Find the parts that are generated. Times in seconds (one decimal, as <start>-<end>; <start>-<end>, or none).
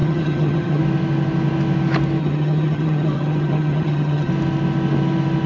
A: 0.0-0.8; 2.2-4.3